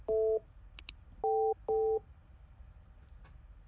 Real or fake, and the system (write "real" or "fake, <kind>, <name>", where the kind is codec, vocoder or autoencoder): real